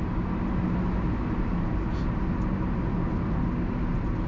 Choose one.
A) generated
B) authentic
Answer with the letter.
B